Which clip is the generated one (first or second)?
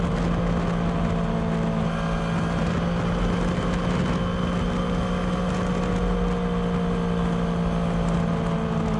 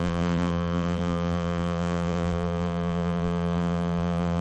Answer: second